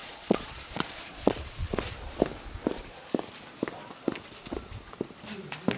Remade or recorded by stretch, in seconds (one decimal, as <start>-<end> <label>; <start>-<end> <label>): 0.0-2.2 remade; 2.2-5.8 recorded